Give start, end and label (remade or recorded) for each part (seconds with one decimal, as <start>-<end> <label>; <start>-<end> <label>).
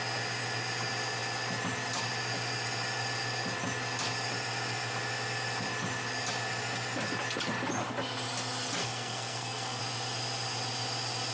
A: 0.0-8.8 recorded; 8.8-9.8 remade; 9.8-11.3 recorded